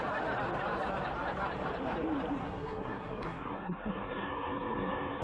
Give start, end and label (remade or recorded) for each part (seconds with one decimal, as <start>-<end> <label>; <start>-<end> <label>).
0.0-2.4 recorded; 2.4-5.2 remade